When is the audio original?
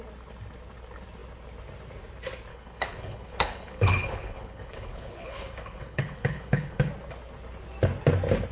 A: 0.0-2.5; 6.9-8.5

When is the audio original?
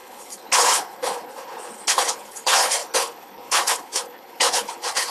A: none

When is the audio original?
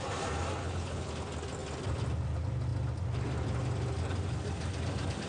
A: 0.0-0.6; 1.1-5.3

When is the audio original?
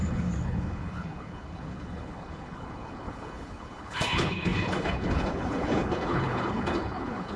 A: none